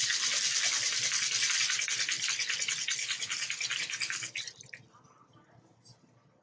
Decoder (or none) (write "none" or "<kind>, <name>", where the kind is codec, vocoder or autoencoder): none